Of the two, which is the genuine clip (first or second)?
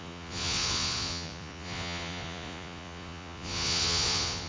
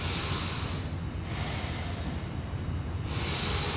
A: second